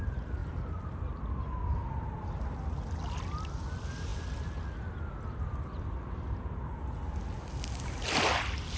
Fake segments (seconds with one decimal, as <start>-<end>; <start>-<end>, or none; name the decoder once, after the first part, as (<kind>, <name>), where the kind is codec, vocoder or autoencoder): none